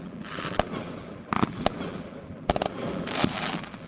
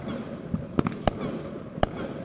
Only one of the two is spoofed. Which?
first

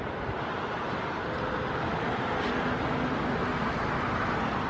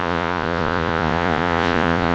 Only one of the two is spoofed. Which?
second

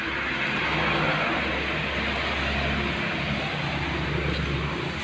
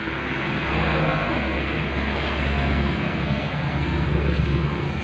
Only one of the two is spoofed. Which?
second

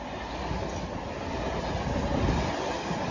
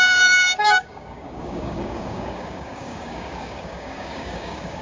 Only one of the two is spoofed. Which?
second